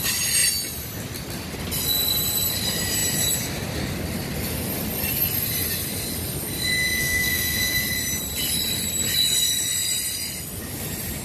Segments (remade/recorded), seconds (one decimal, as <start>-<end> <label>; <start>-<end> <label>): 0.0-7.0 recorded; 7.0-7.8 remade; 7.8-11.2 recorded